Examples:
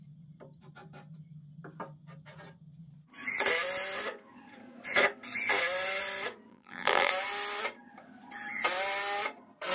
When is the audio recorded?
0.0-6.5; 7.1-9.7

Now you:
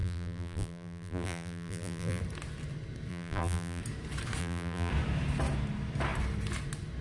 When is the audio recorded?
2.2-3.1; 3.8-4.4; 4.9-7.0

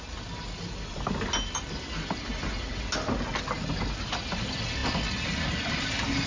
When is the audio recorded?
0.0-6.3

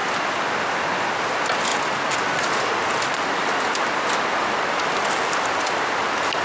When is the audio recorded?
0.0-6.4